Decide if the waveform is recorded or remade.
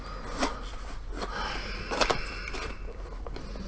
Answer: recorded